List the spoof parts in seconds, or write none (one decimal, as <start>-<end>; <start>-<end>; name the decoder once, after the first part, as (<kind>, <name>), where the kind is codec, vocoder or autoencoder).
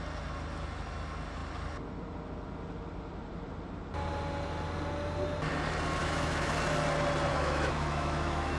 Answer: 6.0-6.5 (autoencoder, DAC-VAE); 7.3-8.6